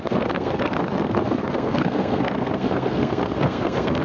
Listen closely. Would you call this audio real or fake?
fake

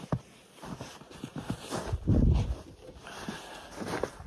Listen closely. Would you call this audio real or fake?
real